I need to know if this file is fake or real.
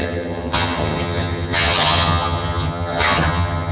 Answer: fake